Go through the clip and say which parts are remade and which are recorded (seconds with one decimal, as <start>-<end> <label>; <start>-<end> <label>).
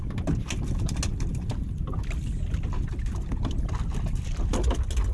0.0-5.1 recorded